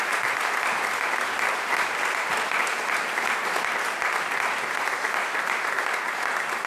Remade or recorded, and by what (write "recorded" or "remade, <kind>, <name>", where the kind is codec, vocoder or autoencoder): recorded